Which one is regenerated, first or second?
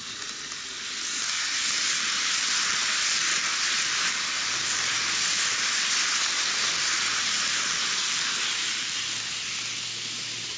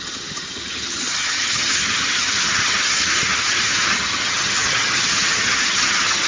second